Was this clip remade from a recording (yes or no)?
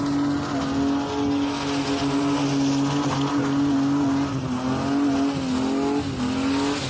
no